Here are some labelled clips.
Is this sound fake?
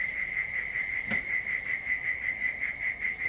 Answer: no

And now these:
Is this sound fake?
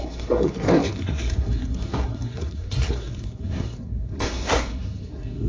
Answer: yes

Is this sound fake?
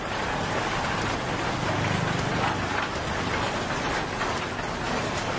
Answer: no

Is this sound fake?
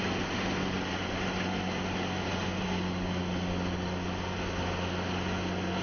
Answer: no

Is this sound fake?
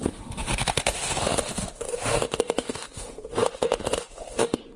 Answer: yes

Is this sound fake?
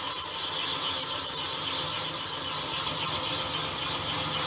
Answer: no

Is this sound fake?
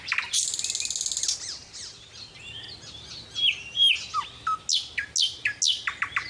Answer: no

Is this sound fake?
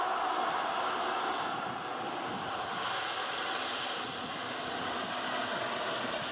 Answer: no